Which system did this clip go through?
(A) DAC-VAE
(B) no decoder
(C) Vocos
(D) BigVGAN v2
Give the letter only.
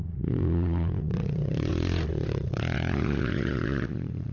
C